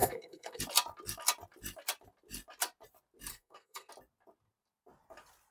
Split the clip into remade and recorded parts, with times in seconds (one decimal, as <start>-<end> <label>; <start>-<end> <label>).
0.0-0.6 remade; 0.6-3.3 recorded; 3.3-3.9 remade; 3.9-5.5 recorded